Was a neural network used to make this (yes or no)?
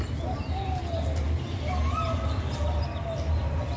no